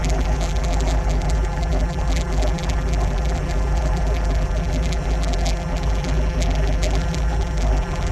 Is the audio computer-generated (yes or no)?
yes